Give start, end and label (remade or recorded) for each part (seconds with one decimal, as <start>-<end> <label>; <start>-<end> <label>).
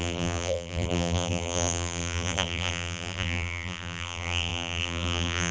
0.0-5.5 remade